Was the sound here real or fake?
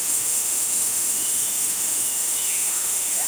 fake